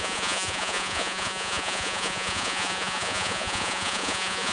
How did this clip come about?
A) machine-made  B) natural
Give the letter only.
A